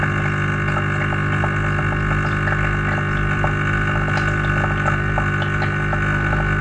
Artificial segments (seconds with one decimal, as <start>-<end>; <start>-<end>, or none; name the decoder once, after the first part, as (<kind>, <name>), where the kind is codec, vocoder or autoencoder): none